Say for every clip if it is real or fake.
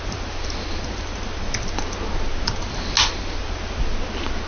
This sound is real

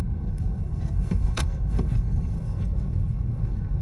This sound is fake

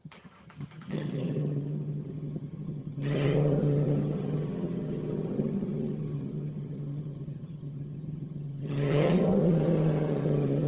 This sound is fake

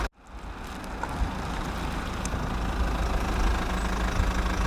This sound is real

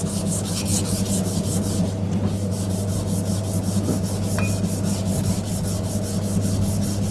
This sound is real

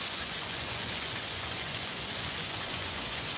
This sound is fake